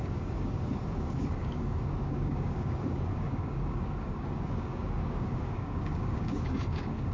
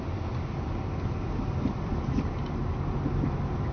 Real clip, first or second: second